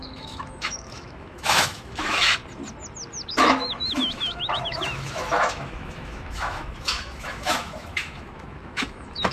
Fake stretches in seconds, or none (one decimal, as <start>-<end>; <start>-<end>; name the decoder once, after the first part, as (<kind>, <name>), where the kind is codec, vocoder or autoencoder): 0.0-2.4 (autoencoder, DAC-VAE); 3.3-9.3